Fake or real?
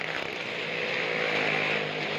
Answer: real